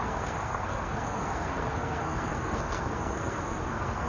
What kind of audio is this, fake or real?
fake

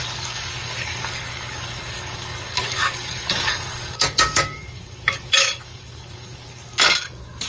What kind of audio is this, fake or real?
fake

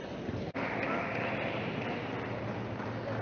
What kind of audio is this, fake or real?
real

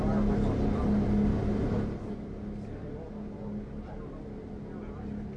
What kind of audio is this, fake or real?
real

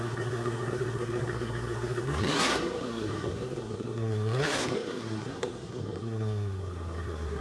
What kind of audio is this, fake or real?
fake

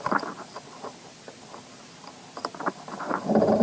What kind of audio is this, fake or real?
real